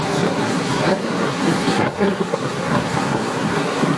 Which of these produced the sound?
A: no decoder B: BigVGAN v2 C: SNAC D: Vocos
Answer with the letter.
C